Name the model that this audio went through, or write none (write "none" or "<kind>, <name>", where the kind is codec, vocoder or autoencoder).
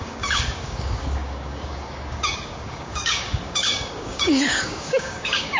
codec, DAC